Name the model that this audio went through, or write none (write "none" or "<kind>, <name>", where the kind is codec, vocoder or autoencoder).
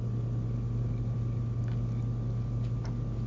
none